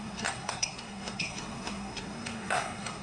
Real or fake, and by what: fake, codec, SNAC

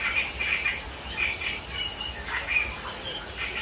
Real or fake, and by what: real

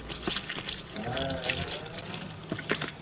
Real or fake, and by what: real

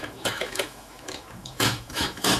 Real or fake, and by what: fake, autoencoder, DAC-VAE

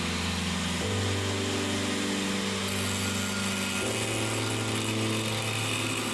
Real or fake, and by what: real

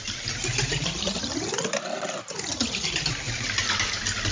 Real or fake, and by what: real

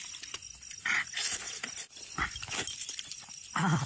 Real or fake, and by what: real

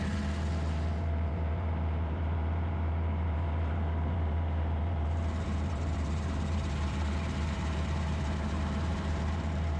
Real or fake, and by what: fake, vocoder, BigVGAN v2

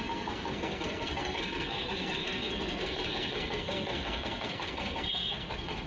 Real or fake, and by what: fake, codec, SNAC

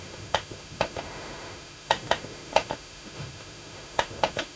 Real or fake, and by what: fake, autoencoder, DAC-VAE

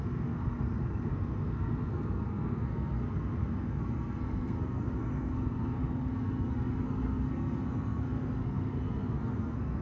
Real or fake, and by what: fake, codec, SNAC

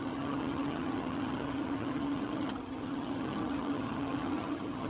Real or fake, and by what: fake, vocoder, HiFi-GAN